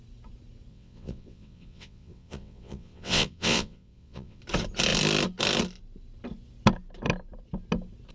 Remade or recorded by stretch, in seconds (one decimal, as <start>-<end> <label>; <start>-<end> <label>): 0.0-0.7 recorded; 0.7-4.4 remade; 4.4-8.1 recorded